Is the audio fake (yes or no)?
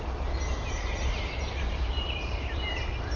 no